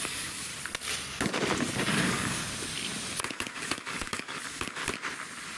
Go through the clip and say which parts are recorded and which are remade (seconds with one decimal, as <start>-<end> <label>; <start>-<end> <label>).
0.0-0.5 remade; 0.5-1.9 recorded; 1.9-2.4 remade; 2.4-3.2 recorded; 3.2-4.8 remade; 4.8-5.6 recorded